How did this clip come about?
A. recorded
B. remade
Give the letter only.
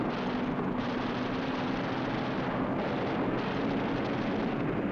A